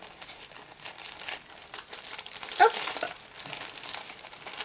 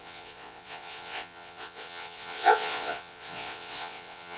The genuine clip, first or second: first